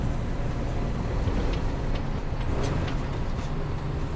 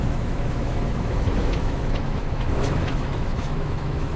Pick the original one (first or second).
first